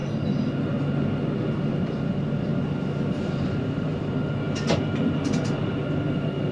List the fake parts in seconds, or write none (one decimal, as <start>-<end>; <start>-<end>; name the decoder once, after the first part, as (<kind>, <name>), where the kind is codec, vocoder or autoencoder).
2.1-2.5 (vocoder, BigVGAN v2); 3.1-6.5